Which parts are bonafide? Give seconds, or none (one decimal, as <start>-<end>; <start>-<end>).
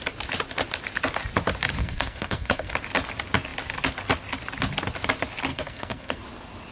0.0-1.8; 2.7-5.5; 6.2-6.7